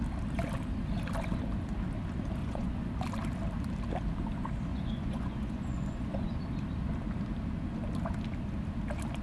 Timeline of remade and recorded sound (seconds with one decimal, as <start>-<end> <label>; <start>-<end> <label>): 0.0-2.4 recorded; 2.4-2.9 remade; 2.9-4.7 recorded; 4.7-6.3 remade; 6.3-9.2 recorded